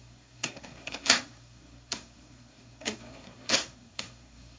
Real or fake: fake